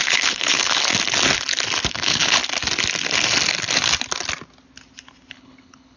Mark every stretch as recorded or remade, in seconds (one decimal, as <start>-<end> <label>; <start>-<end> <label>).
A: 0.0-0.9 remade; 0.9-1.9 recorded; 1.9-2.4 remade; 2.4-5.3 recorded; 5.3-6.0 remade